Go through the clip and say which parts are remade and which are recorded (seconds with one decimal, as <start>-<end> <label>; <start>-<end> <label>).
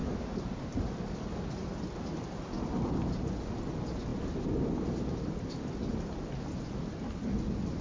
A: 0.0-7.8 recorded